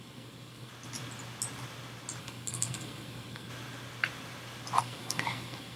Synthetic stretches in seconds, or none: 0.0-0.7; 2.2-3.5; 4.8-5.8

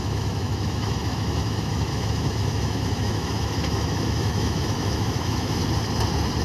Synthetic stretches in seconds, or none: 0.0-5.6

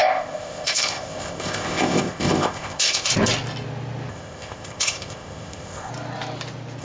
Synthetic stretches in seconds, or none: 0.0-3.1; 4.1-5.9

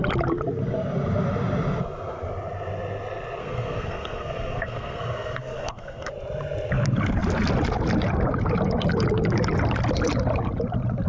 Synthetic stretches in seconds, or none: 3.4-6.1

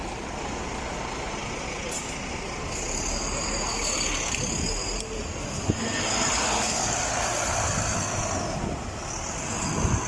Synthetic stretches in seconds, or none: none

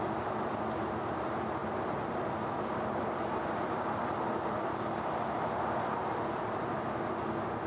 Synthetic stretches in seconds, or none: none

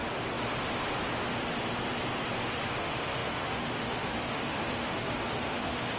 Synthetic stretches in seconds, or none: 2.8-6.0

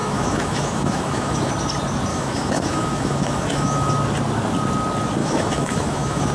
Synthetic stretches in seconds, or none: 0.0-1.5; 2.1-3.9; 5.2-6.3